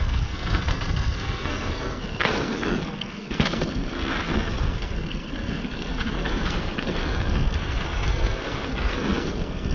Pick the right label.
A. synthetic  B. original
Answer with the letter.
A